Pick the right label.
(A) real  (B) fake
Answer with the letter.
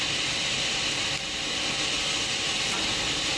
A